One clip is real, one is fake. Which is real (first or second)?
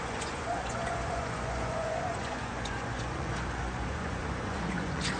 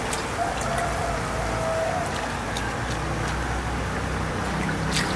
second